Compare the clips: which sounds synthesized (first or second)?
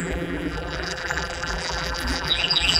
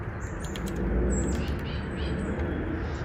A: first